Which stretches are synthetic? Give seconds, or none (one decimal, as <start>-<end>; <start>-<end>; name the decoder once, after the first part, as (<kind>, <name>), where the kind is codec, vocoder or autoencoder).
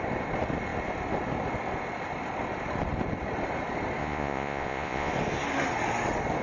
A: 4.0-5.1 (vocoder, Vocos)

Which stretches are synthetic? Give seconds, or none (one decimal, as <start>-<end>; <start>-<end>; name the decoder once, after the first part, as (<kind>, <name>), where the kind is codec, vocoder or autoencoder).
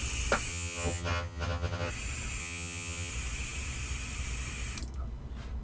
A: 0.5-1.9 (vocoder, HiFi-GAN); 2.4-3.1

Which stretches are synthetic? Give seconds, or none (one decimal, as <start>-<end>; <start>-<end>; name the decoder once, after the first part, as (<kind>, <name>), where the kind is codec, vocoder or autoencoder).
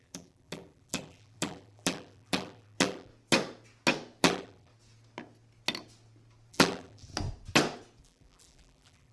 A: 0.0-3.1 (vocoder, BigVGAN v2); 4.2-4.7; 6.5-7.1; 8.0-9.1